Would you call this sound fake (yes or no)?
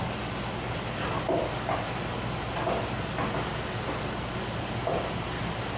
no